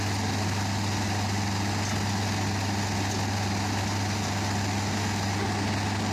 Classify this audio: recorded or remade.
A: recorded